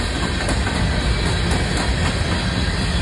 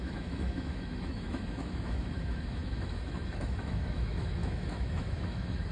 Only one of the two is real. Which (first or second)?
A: first